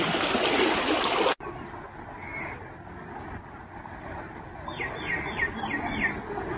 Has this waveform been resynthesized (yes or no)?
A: no